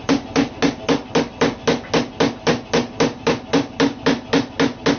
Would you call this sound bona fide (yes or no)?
yes